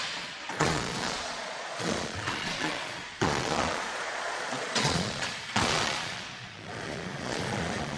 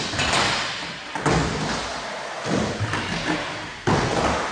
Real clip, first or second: second